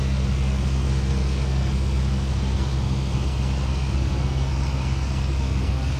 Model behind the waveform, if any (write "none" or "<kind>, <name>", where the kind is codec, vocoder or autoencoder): codec, SNAC